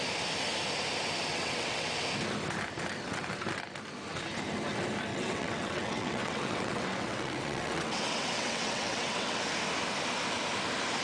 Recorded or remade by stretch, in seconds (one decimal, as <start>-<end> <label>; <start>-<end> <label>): 0.0-1.3 recorded; 1.3-1.9 remade; 1.9-5.1 recorded; 5.1-9.4 remade; 9.4-11.0 recorded